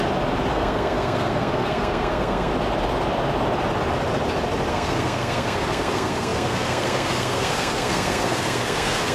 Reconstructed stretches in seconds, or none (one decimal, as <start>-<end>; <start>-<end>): 0.5-2.5; 4.7-9.1